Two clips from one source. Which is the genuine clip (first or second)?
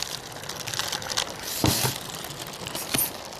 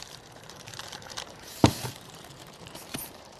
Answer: first